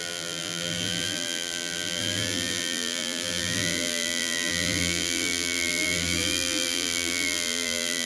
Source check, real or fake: fake